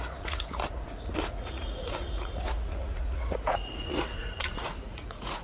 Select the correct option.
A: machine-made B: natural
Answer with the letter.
A